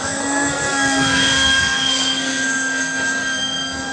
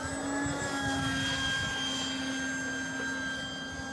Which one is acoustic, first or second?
second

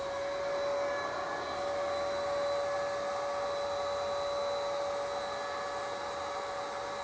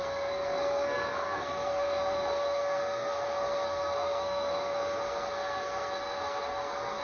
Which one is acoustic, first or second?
first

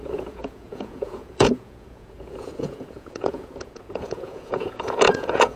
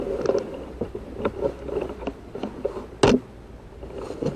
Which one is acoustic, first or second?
second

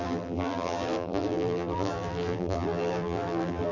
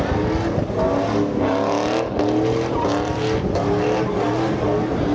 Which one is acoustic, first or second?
second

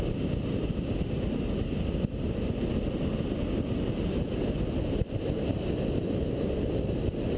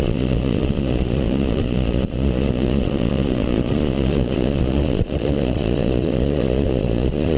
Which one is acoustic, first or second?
first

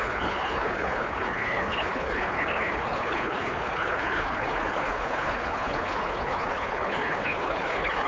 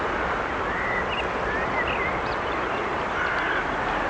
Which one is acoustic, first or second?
second